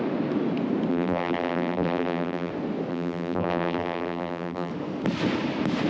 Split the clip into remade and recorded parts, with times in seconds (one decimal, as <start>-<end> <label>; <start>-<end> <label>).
0.0-0.9 recorded; 0.9-2.5 remade; 2.5-2.9 recorded; 2.9-4.7 remade; 4.7-5.9 recorded